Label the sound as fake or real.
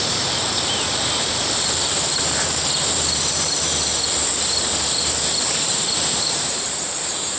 fake